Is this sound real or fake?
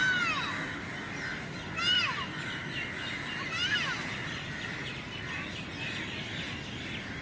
real